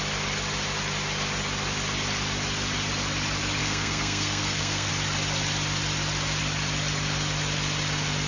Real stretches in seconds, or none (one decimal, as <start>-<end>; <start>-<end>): 0.0-3.6; 4.9-8.3